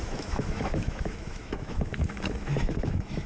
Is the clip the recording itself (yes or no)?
no